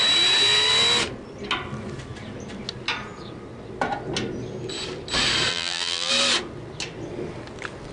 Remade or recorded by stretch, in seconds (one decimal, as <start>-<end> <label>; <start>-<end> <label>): 0.0-5.5 recorded; 5.5-6.1 remade; 6.1-7.9 recorded